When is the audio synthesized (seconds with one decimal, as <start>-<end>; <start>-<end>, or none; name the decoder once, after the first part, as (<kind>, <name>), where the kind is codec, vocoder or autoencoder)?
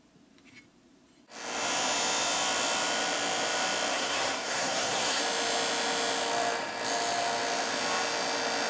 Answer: 3.9-5.2 (codec, SNAC)